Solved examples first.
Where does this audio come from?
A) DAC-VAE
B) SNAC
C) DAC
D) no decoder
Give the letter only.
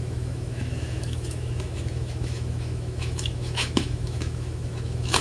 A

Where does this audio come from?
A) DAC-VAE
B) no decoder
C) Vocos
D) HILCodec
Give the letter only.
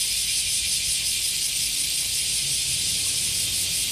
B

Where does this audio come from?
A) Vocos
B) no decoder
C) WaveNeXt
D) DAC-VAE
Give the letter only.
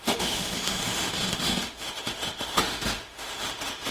D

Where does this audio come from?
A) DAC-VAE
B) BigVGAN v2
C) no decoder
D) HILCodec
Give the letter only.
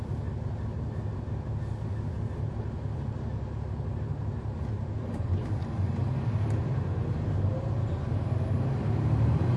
C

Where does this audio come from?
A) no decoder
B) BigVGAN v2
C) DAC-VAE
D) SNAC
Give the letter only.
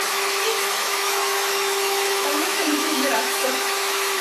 C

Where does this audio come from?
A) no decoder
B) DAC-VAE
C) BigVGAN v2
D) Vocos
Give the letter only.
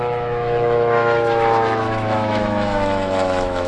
B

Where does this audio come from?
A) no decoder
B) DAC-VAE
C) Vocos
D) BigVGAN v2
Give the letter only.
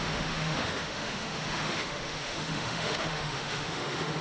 B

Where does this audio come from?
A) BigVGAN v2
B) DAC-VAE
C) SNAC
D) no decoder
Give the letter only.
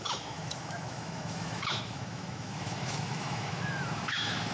B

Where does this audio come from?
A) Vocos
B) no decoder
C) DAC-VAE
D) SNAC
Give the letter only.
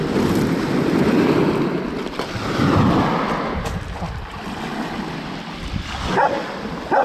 B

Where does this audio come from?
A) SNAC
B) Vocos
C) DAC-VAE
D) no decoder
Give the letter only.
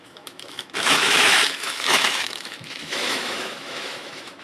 C